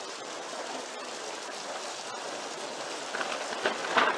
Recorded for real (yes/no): yes